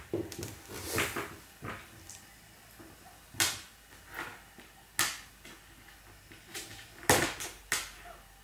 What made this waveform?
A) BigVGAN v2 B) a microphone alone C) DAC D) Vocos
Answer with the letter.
B